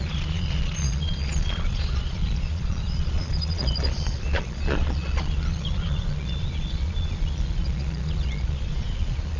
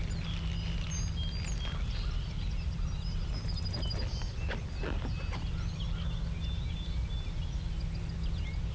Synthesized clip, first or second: first